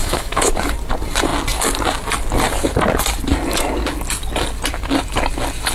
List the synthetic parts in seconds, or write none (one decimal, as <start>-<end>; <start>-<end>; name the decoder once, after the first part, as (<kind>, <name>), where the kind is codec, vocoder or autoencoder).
0.0-0.5 (autoencoder, DAC-VAE)